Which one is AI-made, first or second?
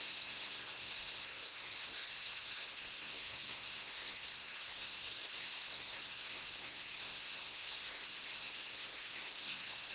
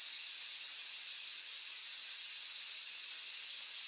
first